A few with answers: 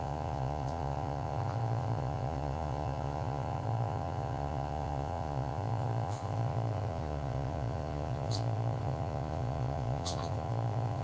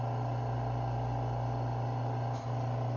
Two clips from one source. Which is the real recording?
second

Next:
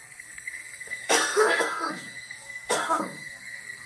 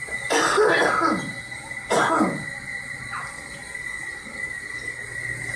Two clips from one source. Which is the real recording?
second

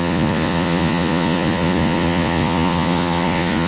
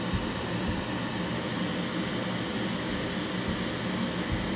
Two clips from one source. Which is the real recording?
second